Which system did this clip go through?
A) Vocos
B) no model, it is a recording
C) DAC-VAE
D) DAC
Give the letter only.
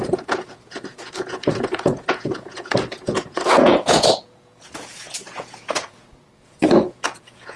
A